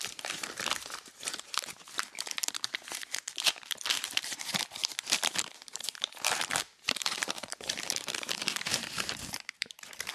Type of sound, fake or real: fake